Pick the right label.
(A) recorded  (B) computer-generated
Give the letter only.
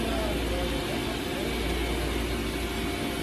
A